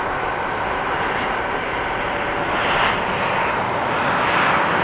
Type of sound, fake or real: real